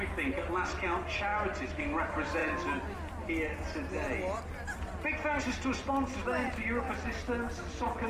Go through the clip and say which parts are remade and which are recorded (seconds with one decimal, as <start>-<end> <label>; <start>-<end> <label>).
0.0-8.1 recorded